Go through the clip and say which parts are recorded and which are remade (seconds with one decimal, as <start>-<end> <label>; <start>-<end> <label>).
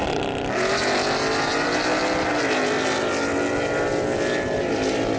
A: 0.0-5.2 recorded